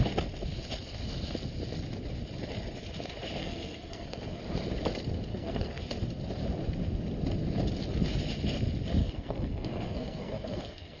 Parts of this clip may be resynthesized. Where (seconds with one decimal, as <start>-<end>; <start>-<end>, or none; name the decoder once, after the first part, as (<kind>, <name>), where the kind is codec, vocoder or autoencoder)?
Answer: 3.4-4.4 (codec, SNAC); 5.3-5.8; 9.0-11.0